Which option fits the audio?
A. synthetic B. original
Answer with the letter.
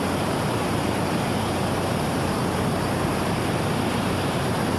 A